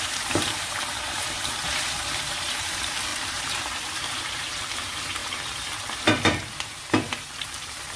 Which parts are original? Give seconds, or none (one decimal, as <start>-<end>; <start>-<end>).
none